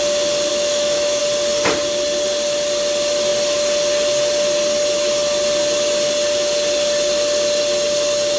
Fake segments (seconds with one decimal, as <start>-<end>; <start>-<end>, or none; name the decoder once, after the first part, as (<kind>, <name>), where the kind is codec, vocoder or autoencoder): 0.5-1.2 (autoencoder, DAC-VAE)